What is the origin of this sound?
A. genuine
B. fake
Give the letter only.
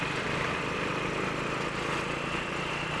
B